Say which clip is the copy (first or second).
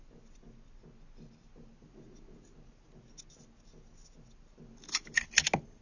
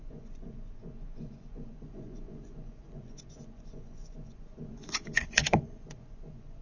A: second